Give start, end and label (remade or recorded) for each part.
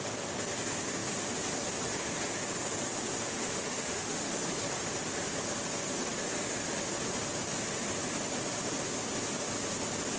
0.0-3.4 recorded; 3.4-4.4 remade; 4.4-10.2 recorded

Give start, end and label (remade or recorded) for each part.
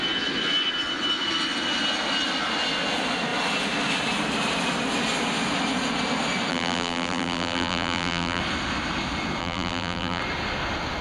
0.0-6.5 recorded; 6.5-8.4 remade; 8.4-9.4 recorded; 9.4-10.2 remade; 10.2-11.0 recorded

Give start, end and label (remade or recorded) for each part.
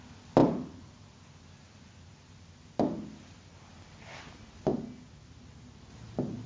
0.0-6.5 recorded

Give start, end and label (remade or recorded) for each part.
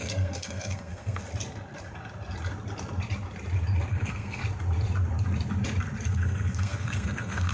0.0-1.2 remade; 1.2-3.9 recorded; 3.9-4.4 remade; 4.4-6.1 recorded; 6.1-7.5 remade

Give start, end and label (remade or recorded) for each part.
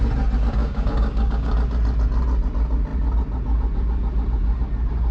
0.0-0.6 recorded; 0.6-1.5 remade; 1.5-5.1 recorded